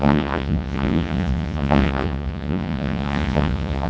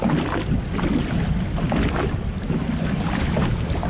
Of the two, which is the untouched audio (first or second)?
second